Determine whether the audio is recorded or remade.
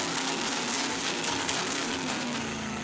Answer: remade